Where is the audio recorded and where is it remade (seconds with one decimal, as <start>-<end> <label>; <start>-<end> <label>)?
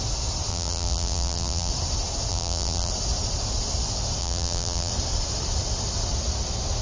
0.0-0.5 recorded; 0.5-1.7 remade; 1.7-2.3 recorded; 2.3-2.9 remade; 2.9-4.2 recorded; 4.2-4.9 remade; 4.9-6.8 recorded